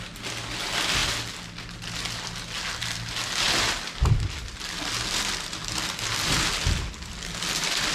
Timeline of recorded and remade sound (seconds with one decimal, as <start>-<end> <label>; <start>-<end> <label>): 0.0-7.9 recorded